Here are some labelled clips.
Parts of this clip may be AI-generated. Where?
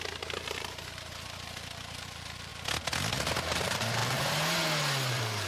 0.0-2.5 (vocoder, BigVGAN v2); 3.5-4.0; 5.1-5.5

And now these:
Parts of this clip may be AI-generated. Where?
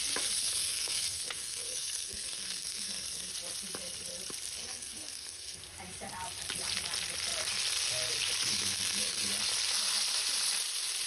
0.4-3.3 (codec, SNAC); 4.6-5.6; 8.5-9.3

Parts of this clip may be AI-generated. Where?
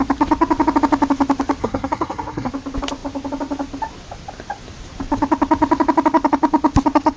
1.6-2.5 (codec, SNAC)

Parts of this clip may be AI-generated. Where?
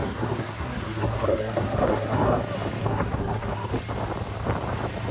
0.0-2.4 (codec, SNAC); 2.8-3.7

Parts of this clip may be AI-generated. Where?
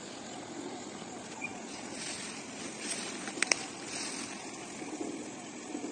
none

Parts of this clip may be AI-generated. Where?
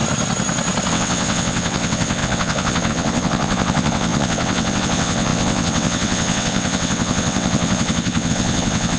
0.9-9.0 (vocoder, WaveNeXt)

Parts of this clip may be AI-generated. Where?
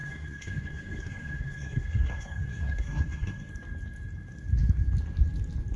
0.0-3.5 (codec, SNAC)